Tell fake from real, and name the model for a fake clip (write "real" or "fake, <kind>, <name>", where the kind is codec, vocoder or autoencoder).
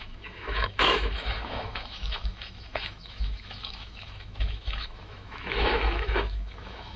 fake, autoencoder, DAC-VAE